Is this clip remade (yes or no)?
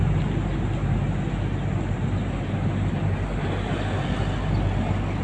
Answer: no